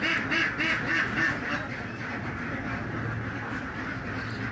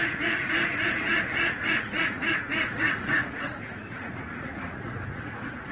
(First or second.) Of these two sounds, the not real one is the second